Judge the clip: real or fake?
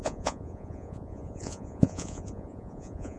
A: fake